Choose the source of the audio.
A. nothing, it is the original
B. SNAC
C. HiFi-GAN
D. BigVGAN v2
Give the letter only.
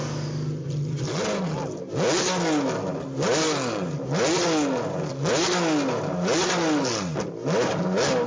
A